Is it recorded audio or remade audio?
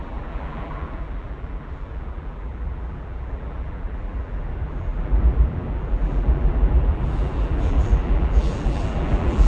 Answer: remade